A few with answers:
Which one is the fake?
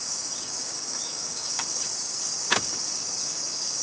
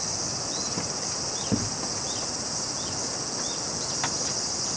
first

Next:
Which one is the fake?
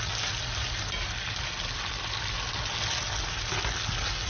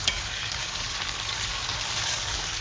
second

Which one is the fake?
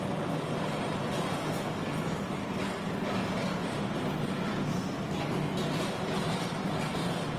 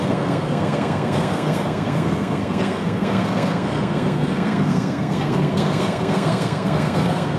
second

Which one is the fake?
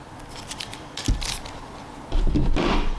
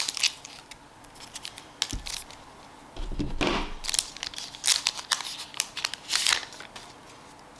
first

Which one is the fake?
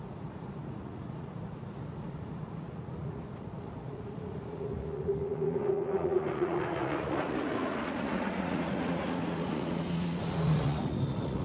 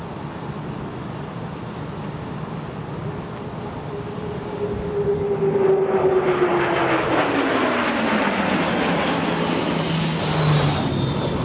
first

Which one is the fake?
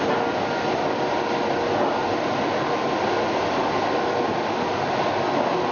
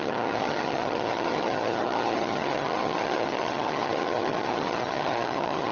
second